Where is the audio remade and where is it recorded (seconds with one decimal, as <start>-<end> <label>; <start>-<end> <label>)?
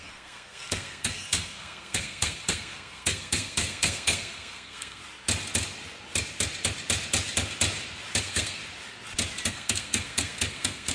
0.0-5.0 remade; 5.0-8.2 recorded; 8.2-8.6 remade; 8.6-9.5 recorded; 9.5-10.9 remade